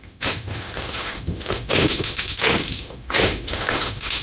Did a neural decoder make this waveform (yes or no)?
yes